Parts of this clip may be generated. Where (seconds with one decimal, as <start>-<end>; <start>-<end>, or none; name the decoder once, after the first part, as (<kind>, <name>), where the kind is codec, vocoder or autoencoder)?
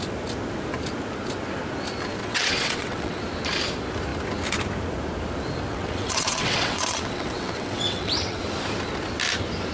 2.2-3.2 (vocoder, WaveNeXt); 5.7-8.4